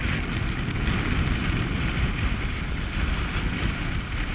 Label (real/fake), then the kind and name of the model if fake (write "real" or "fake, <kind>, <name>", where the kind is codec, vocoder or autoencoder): real